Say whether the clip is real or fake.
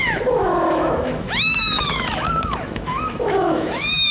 fake